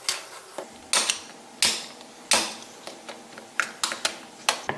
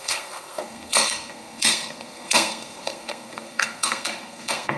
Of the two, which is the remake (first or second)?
second